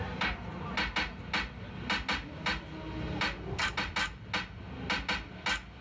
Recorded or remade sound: recorded